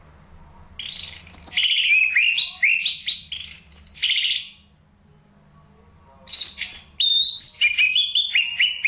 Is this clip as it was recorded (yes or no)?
yes